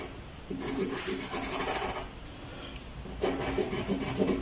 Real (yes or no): yes